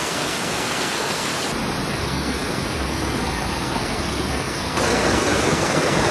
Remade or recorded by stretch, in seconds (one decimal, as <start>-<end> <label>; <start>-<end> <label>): 0.0-1.3 remade; 1.3-1.9 recorded; 1.9-6.1 remade

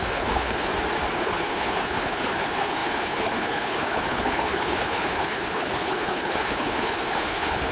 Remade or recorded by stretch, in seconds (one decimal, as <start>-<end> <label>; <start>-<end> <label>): 0.0-0.7 remade; 0.7-1.2 recorded; 1.2-7.7 remade

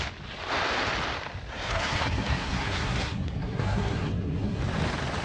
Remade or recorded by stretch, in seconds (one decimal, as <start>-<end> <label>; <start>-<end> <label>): 0.0-1.5 recorded; 1.5-4.6 remade; 4.6-5.2 recorded

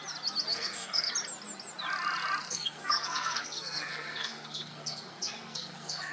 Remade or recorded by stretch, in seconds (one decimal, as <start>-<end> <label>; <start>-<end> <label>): 0.0-0.5 recorded; 0.5-1.1 remade; 1.1-2.4 recorded; 2.4-6.1 remade

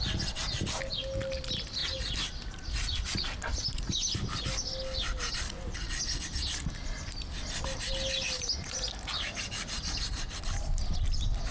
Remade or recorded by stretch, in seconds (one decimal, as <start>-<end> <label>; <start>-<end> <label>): 0.0-11.5 recorded

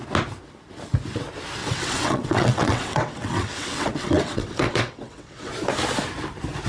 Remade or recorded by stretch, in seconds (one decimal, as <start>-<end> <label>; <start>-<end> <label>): 0.0-1.6 recorded; 1.6-5.5 remade; 5.5-6.7 recorded

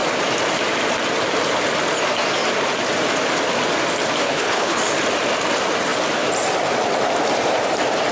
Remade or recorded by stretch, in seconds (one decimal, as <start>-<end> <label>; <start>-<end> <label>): 0.0-4.2 recorded; 4.2-4.8 remade; 4.8-8.1 recorded

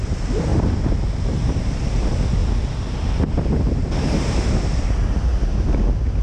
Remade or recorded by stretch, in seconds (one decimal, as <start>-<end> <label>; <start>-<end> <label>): 0.0-2.4 remade; 2.4-3.2 recorded; 3.2-5.3 remade; 5.3-6.2 recorded